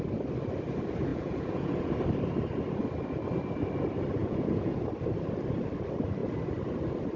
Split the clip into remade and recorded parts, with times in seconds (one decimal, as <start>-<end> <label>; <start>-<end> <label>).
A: 0.0-1.1 recorded; 1.1-1.9 remade; 1.9-4.2 recorded; 4.2-4.8 remade; 4.8-7.2 recorded